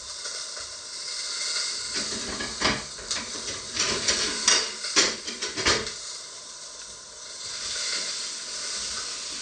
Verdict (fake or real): fake